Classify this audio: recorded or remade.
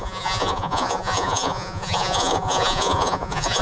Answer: remade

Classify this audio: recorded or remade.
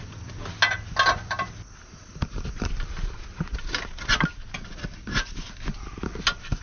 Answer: recorded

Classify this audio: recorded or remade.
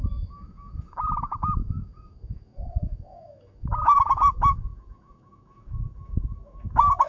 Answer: remade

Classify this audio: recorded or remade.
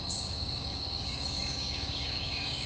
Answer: remade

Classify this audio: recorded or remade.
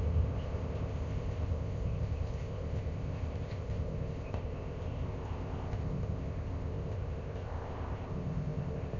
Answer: remade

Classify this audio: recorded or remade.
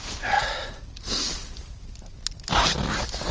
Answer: recorded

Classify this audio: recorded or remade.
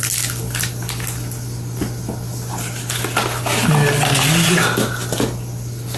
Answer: recorded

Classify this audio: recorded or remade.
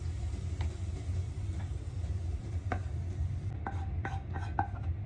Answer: remade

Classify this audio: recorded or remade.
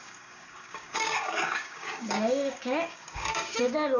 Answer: remade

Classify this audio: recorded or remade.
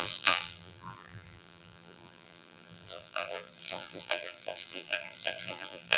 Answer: remade